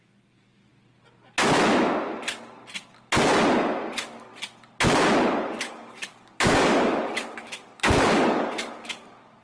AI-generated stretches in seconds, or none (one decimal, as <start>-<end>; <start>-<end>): 0.0-0.7; 3.9-4.3; 5.5-9.4